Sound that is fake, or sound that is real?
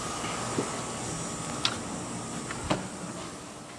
real